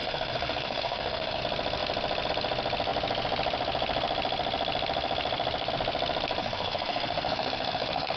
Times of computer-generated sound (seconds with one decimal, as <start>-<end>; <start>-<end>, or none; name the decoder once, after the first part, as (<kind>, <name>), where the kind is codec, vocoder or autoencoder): 0.0-1.4 (codec, SNAC); 6.4-8.2